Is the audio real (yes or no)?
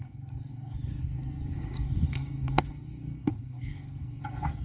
no